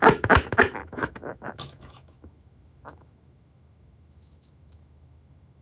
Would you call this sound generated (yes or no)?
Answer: yes